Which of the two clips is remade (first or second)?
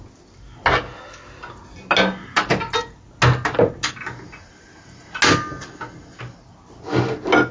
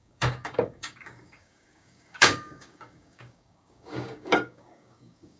second